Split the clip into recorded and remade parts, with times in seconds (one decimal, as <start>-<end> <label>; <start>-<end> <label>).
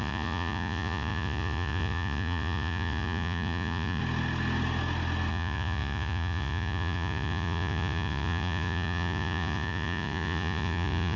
0.0-4.0 remade; 4.0-5.3 recorded; 5.3-11.2 remade